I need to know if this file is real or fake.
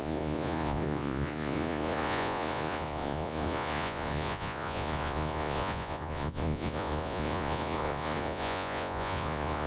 fake